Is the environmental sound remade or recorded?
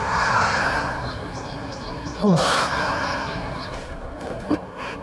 remade